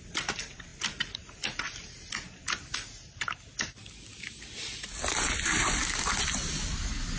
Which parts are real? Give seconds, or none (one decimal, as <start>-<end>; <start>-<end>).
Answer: 0.0-7.2